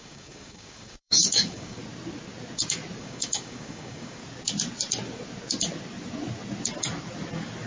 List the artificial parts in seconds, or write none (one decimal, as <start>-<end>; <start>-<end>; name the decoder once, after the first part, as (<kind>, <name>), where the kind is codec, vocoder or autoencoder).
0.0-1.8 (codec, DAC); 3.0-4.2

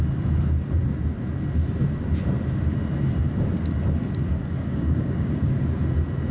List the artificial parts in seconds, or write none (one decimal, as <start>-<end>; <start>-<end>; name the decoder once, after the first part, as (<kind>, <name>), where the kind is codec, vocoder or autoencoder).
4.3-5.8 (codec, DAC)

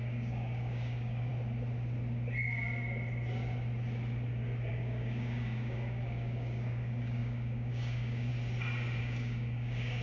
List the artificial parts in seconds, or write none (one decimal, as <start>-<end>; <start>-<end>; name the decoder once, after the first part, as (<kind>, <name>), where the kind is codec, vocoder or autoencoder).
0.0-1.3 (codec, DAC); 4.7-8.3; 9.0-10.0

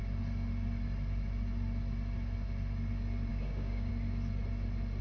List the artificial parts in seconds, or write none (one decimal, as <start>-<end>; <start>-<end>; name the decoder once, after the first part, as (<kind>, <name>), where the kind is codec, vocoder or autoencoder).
3.3-3.9 (codec, DAC)

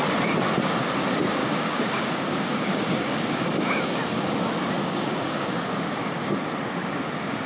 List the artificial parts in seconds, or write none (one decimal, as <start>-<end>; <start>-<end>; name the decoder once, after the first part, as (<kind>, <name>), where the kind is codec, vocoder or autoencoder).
1.4-4.0 (codec, DAC); 4.8-6.3; 6.8-7.5